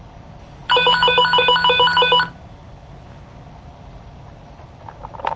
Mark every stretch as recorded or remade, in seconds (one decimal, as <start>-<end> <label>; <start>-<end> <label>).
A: 0.0-5.4 recorded